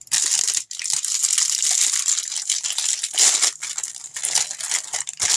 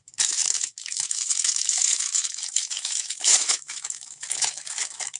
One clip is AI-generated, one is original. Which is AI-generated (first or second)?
second